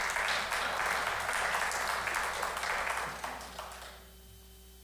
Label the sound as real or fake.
real